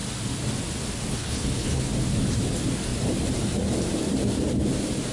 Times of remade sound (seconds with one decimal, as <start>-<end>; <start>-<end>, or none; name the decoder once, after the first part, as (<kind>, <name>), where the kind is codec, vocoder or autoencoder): 1.1-1.8 (codec, HILCodec)